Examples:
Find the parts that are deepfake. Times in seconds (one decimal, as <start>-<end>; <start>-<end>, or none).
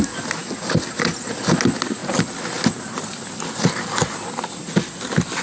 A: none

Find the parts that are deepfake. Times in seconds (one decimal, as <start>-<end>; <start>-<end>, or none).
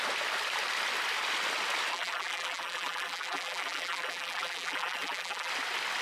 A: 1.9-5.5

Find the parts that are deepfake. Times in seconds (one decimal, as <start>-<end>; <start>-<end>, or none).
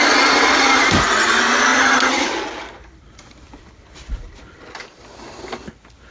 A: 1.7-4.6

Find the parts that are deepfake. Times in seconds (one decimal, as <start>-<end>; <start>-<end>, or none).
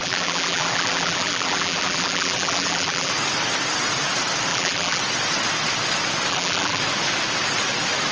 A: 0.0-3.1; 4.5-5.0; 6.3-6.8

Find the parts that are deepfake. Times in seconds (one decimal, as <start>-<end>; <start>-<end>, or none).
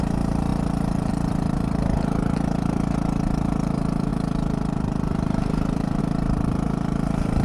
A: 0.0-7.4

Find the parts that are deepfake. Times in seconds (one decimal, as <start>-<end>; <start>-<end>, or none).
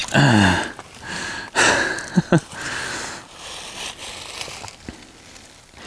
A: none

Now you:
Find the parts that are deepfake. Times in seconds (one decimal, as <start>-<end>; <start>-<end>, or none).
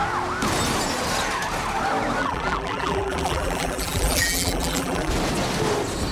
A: 2.2-5.1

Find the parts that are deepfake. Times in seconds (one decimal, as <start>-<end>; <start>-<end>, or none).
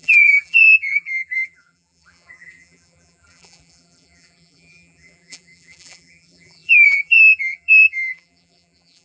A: 0.0-9.0